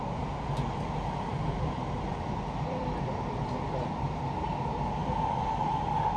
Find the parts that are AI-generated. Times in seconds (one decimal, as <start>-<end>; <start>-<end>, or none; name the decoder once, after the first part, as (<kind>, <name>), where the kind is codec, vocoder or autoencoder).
1.3-3.5 (vocoder, BigVGAN v2); 5.0-5.8

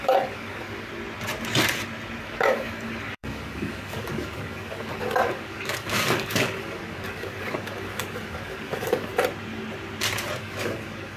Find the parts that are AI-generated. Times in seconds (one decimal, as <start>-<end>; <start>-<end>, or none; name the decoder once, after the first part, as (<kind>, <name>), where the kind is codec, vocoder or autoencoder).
0.0-0.9 (codec, DAC); 2.2-9.1; 10.4-11.2

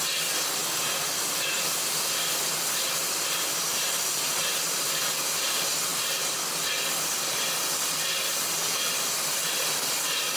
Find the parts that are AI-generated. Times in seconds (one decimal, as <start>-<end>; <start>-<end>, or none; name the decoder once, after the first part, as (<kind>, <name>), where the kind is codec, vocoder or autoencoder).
none

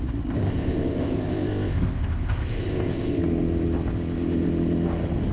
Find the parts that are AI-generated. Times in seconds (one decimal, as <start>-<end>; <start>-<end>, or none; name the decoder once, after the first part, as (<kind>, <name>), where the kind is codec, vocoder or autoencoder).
0.4-3.2 (codec, ZipCodec)

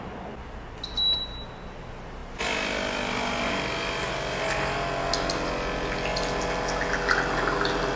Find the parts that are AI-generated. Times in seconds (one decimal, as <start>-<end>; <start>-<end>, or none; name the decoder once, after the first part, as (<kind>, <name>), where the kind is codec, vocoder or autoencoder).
none

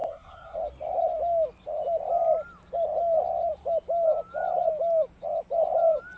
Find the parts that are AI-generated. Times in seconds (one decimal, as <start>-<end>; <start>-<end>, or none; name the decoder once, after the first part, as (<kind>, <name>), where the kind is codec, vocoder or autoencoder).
0.0-0.6 (codec, SNAC)